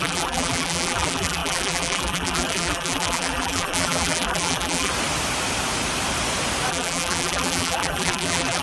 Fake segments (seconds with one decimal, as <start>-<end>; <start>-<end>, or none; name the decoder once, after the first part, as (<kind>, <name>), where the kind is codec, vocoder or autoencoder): 0.0-4.9 (vocoder, BigVGAN v2); 6.7-8.6